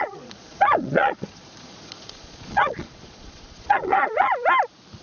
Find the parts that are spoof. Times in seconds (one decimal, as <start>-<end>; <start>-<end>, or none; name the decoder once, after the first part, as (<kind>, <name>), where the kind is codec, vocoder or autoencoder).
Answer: 0.0-4.3 (vocoder, Vocos)